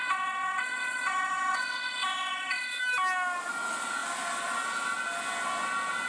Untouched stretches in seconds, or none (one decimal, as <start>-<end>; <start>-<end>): 2.8-6.1